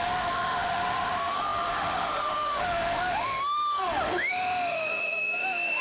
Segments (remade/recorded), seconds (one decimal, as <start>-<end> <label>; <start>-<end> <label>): 0.0-5.8 remade